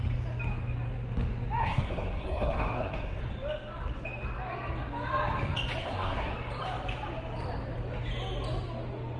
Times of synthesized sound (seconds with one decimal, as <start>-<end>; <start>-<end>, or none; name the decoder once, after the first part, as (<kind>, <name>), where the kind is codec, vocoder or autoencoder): 1.6-3.2 (codec, SNAC); 5.8-6.3